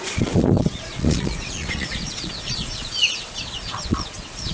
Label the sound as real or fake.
fake